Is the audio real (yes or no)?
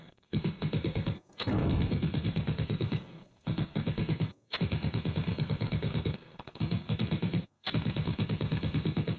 no